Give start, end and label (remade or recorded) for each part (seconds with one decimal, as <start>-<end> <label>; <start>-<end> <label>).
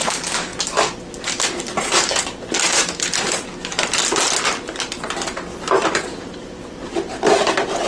0.0-0.5 remade; 0.5-2.7 recorded; 2.7-3.5 remade; 3.5-5.8 recorded; 5.8-7.9 remade